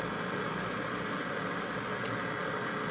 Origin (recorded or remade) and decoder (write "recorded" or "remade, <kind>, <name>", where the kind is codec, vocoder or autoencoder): recorded